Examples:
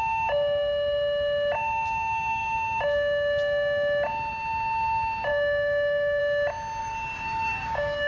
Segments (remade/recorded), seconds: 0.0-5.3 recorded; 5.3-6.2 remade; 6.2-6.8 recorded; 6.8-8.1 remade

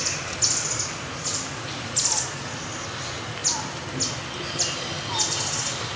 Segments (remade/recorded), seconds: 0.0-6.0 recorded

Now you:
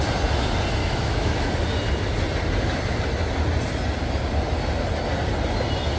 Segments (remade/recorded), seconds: 0.0-0.8 recorded; 0.8-1.5 remade; 1.5-6.0 recorded

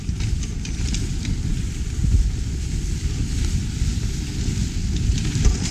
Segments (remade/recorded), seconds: 0.0-5.7 recorded